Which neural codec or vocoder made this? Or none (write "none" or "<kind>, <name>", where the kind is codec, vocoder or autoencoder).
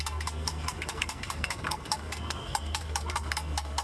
codec, SNAC